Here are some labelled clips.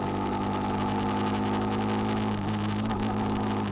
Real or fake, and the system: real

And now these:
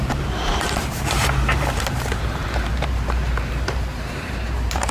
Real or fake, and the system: fake, vocoder, BigVGAN v2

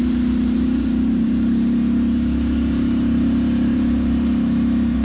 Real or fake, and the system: fake, vocoder, BigVGAN v2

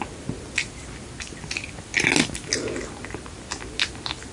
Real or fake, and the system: real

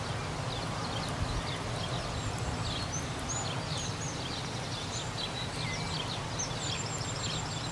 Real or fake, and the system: real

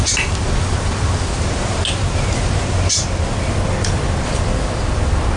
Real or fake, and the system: real